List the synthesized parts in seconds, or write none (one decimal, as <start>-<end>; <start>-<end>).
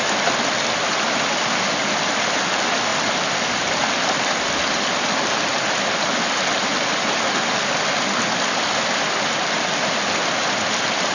none